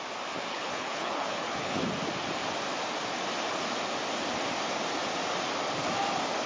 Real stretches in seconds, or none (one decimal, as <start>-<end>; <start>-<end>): 0.0-0.5; 1.8-6.5